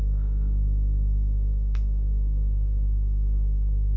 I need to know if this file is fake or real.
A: fake